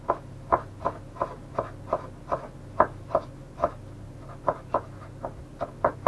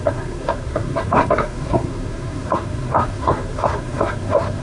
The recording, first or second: first